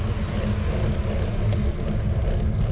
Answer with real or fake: real